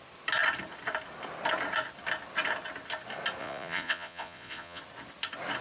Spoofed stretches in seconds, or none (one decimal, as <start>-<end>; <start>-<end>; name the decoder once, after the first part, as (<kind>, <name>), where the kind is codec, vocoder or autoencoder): 3.4-4.8 (vocoder, Vocos)